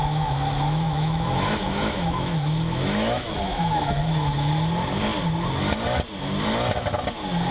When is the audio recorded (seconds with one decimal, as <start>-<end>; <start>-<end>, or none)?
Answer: 4.5-7.5